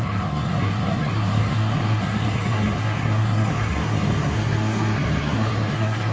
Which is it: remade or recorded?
remade